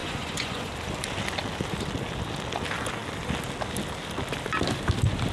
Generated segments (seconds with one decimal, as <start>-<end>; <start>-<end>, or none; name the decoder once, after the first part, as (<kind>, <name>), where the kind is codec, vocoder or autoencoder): 0.0-0.7 (vocoder, Vocos)